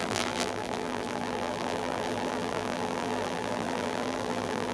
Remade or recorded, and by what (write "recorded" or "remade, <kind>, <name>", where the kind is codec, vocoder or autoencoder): remade, vocoder, BigVGAN v2